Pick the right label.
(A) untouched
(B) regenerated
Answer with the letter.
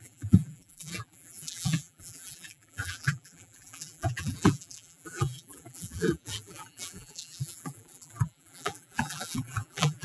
B